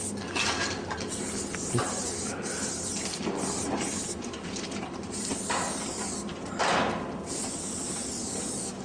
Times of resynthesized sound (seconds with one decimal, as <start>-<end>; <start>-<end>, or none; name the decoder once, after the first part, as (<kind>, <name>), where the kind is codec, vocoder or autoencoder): none